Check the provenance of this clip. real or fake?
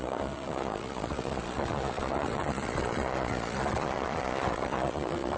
fake